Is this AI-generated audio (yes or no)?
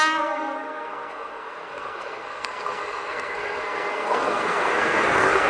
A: yes